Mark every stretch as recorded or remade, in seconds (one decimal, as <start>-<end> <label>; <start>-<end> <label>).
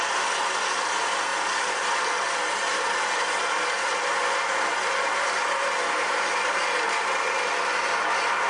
0.0-8.5 recorded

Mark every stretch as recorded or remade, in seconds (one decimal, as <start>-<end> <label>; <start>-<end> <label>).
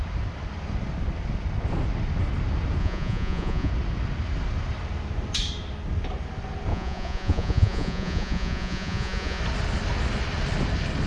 0.0-2.8 recorded; 2.8-3.7 remade; 3.7-6.7 recorded; 6.7-9.4 remade; 9.4-11.1 recorded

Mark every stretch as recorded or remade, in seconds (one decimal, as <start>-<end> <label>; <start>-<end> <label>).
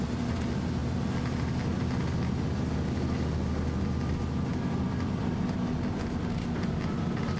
0.0-7.4 recorded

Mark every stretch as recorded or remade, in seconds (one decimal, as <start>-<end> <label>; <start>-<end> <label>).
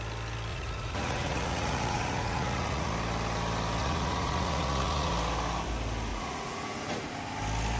0.0-0.5 recorded; 0.5-2.9 remade; 2.9-3.8 recorded; 3.8-5.1 remade; 5.1-6.1 recorded; 6.1-7.1 remade; 7.1-7.8 recorded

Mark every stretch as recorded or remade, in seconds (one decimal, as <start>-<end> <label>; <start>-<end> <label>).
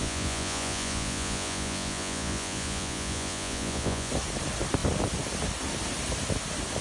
0.0-4.1 remade; 4.1-6.8 recorded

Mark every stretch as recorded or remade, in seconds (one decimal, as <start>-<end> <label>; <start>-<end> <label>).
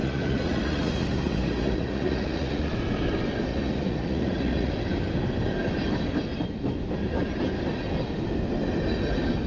0.0-2.7 remade; 2.7-3.5 recorded; 3.5-4.7 remade; 4.7-9.5 recorded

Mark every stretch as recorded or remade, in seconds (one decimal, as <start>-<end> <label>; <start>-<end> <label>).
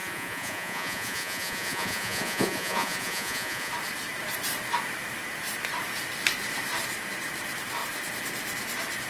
0.0-3.7 remade; 3.7-9.1 recorded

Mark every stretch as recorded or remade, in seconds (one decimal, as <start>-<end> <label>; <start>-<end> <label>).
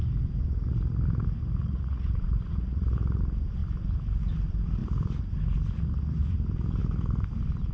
0.0-1.6 recorded; 1.6-3.2 remade; 3.2-7.7 recorded